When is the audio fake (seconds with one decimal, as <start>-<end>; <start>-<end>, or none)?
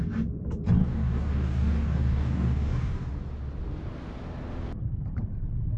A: 0.8-3.1